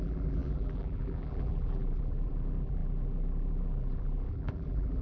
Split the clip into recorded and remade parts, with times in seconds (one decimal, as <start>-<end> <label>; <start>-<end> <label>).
0.0-5.0 remade